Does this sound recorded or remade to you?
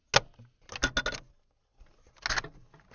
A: recorded